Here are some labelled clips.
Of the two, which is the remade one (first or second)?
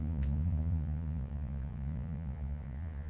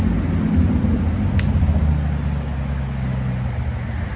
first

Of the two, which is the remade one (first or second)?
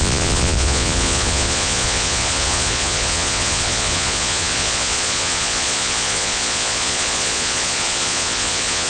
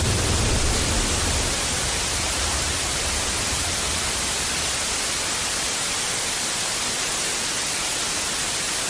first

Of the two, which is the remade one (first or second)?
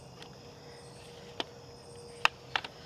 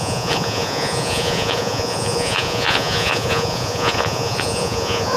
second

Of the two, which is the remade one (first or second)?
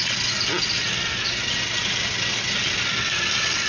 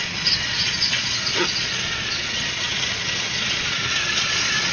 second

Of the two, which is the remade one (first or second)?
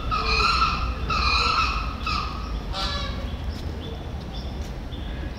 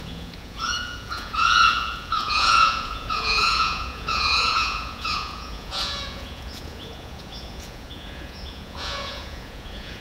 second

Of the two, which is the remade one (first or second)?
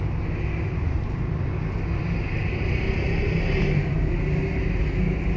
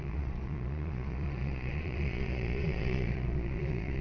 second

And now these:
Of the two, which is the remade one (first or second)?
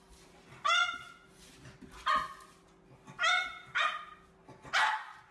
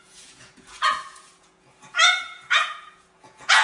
second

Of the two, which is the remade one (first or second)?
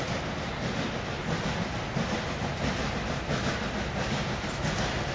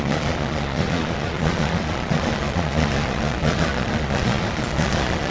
second